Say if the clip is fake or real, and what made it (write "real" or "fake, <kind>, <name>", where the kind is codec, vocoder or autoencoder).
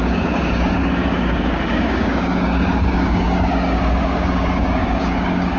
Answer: fake, codec, DAC